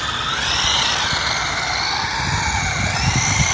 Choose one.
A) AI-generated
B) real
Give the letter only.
B